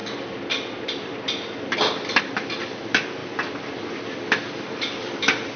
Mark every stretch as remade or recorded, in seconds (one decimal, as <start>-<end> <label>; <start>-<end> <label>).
0.0-5.6 recorded